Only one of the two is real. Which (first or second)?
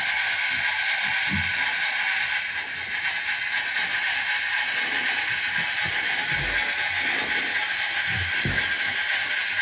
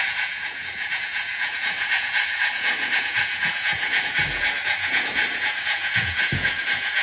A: first